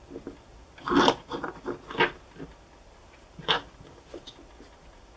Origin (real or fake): real